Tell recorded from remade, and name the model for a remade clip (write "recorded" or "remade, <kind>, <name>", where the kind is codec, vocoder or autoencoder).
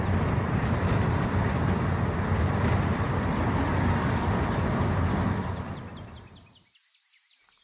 recorded